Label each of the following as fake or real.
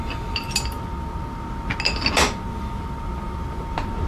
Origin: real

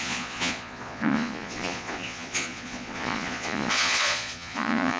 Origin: fake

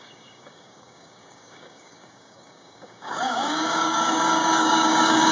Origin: fake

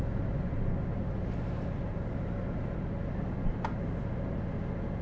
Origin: real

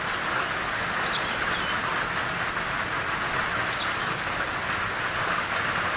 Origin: real